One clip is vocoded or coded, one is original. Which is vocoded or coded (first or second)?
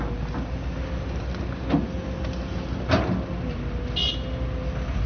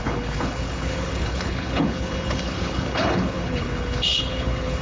second